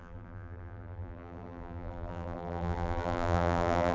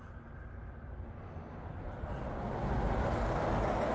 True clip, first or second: second